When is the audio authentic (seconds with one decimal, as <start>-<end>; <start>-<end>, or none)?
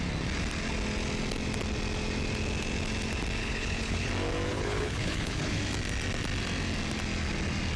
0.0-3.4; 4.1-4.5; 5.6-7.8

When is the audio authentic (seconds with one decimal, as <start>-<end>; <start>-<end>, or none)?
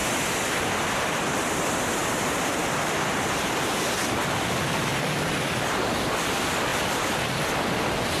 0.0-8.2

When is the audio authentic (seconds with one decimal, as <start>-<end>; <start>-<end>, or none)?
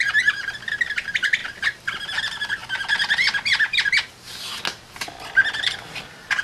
0.0-6.4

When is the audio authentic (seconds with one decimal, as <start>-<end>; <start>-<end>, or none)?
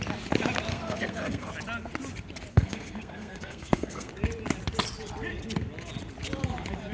0.0-0.7; 1.5-2.5; 4.1-6.9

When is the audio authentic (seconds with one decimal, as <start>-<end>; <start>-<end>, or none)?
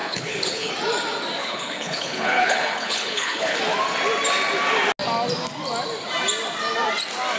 0.7-1.4; 3.6-7.4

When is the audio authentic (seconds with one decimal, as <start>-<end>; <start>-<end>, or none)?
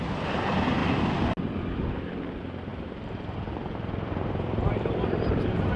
0.0-2.7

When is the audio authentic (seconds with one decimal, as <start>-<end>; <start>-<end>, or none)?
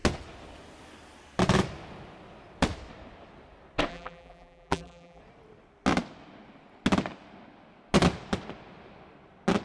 0.0-3.9; 5.2-9.6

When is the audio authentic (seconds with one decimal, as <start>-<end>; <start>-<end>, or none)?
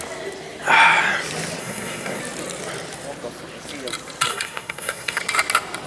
0.0-1.6; 2.2-4.3; 5.2-5.9